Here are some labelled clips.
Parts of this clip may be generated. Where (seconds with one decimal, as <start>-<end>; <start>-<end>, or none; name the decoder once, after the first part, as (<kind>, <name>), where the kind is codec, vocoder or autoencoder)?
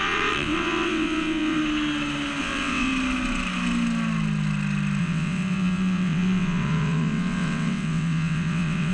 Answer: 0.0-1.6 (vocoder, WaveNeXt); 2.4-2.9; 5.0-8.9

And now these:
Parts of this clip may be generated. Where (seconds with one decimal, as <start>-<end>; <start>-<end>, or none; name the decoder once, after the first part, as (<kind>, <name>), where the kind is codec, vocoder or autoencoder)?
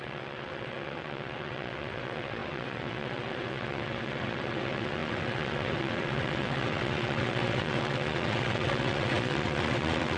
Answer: 0.0-10.2 (vocoder, WaveNeXt)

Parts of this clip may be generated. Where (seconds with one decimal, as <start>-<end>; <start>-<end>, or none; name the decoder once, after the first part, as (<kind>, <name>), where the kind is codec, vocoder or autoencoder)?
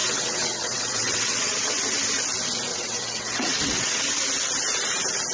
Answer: 0.0-1.8 (vocoder, WaveNeXt); 2.7-4.0